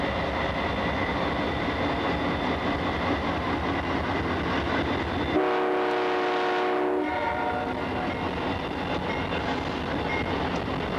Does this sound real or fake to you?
real